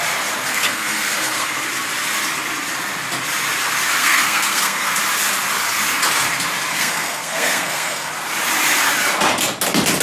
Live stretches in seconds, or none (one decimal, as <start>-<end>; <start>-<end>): 0.0-0.5; 1.6-4.0; 4.9-6.7; 8.1-10.0